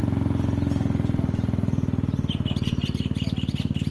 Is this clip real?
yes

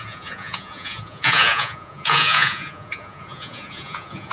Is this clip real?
no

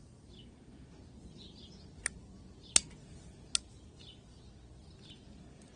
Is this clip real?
yes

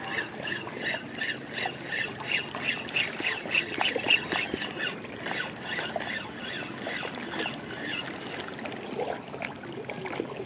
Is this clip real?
yes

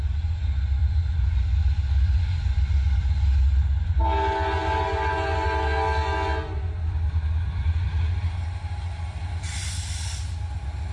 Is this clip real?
yes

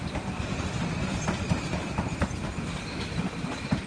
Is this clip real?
yes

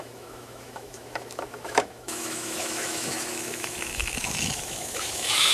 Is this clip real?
no